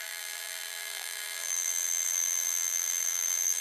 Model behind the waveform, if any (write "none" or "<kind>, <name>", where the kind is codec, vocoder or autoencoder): vocoder, BigVGAN v2